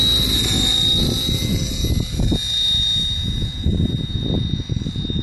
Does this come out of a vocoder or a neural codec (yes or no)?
no